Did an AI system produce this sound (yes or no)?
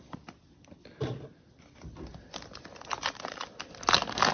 no